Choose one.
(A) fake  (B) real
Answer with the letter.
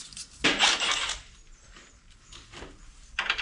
B